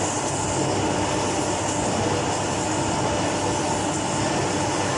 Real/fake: real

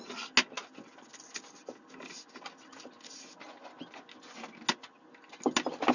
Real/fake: real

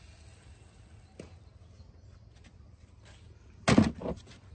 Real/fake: real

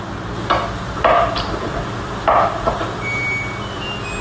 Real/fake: real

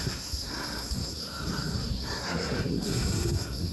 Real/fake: fake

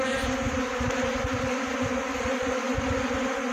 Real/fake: real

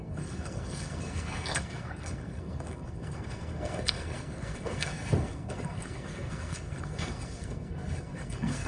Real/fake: fake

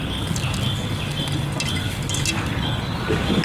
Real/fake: real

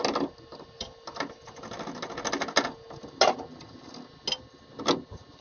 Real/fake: real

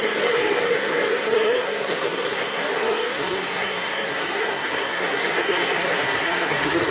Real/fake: fake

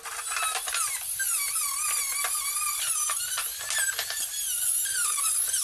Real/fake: real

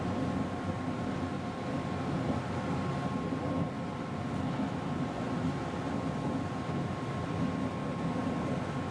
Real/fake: real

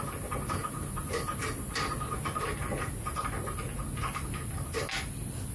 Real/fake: real